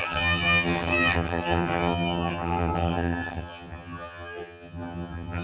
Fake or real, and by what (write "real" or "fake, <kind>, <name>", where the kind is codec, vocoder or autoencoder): fake, vocoder, HiFi-GAN